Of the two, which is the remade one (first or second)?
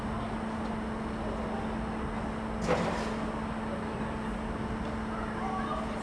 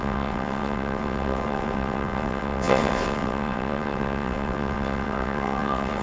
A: second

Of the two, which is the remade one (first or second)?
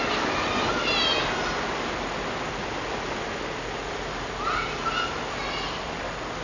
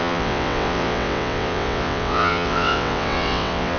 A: second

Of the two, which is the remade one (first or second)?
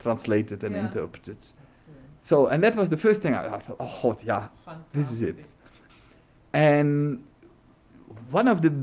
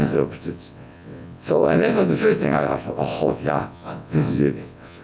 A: second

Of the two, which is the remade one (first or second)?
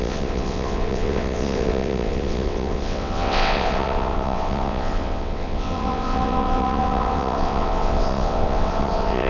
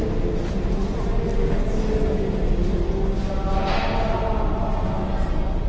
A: first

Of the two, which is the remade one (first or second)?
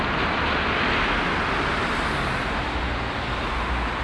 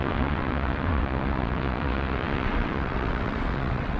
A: second